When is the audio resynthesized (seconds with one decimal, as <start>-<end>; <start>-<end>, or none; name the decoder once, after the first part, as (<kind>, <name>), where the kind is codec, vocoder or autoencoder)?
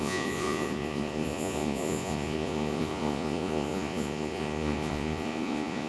0.0-5.9 (vocoder, Vocos)